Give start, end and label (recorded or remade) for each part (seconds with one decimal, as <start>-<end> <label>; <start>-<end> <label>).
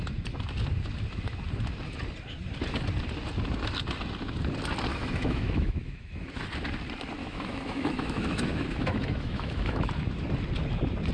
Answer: 0.0-4.9 recorded; 4.9-6.3 remade; 6.3-7.2 recorded; 7.2-9.9 remade; 9.9-11.1 recorded